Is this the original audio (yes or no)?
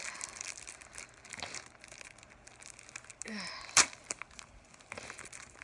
yes